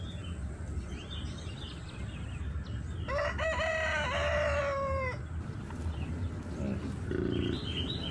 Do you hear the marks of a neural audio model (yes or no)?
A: no